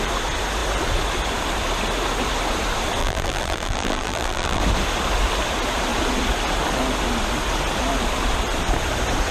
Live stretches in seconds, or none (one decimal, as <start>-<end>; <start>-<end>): 0.0-3.0; 4.6-9.3